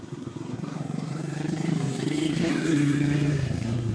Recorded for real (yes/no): no